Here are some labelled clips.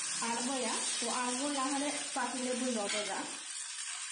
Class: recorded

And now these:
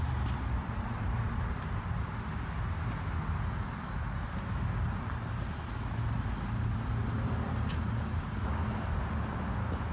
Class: recorded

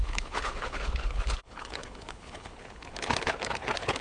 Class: remade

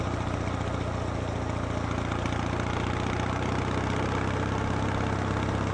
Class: recorded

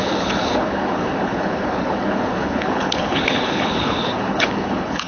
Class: remade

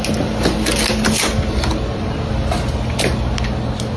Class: recorded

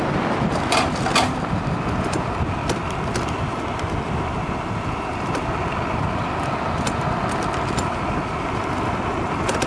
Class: recorded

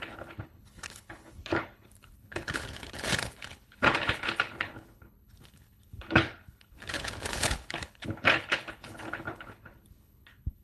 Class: remade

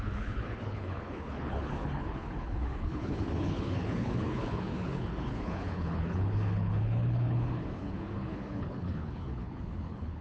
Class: remade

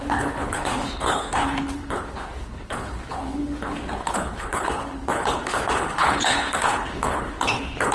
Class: remade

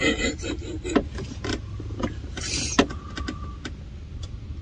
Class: recorded